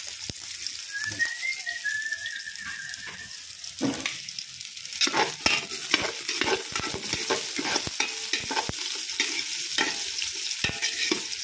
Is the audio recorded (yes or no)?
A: yes